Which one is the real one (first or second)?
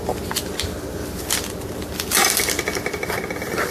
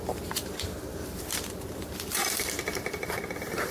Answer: first